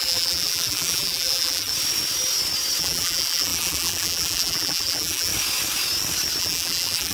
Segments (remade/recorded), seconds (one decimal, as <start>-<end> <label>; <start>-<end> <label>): 0.0-1.7 remade; 1.7-2.8 recorded; 2.8-5.3 remade; 5.3-6.4 recorded; 6.4-7.1 remade